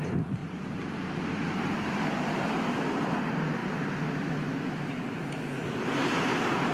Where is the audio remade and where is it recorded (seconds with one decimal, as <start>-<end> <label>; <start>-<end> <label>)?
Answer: 0.0-0.4 recorded; 0.4-3.2 remade; 3.2-6.7 recorded